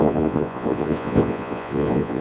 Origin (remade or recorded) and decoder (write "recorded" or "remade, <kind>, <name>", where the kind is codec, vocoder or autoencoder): remade, vocoder, Vocos